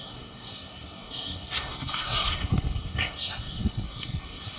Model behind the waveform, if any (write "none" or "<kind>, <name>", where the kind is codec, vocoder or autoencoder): codec, SNAC